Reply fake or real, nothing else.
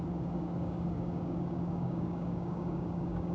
fake